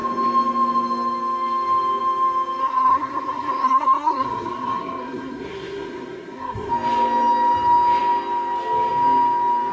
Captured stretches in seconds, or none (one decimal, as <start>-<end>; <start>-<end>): 0.0-2.6; 6.7-9.7